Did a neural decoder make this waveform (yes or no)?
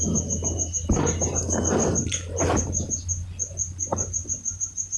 no